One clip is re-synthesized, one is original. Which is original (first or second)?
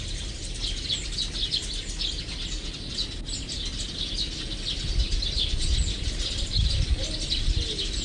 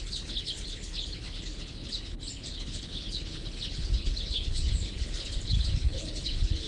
first